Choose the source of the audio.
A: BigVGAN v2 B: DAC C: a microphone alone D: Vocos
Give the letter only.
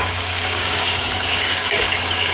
B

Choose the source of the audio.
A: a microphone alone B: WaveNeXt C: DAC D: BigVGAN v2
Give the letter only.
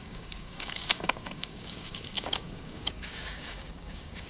C